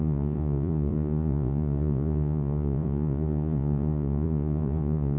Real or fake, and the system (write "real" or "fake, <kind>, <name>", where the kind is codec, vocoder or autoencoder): fake, vocoder, Vocos